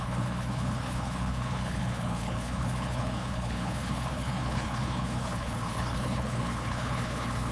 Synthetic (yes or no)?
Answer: yes